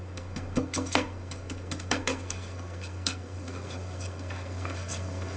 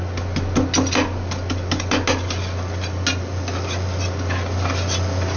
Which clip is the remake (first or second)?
first